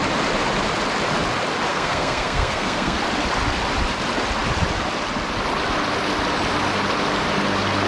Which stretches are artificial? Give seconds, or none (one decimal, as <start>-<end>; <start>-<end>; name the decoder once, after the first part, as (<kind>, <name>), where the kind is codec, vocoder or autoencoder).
1.7-3.0 (codec, SNAC)